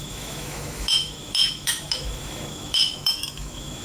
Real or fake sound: fake